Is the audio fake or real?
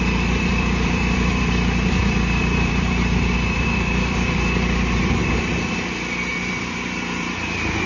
fake